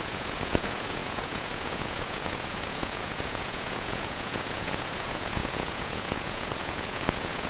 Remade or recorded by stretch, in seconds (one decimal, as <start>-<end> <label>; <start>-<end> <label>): 0.0-7.5 remade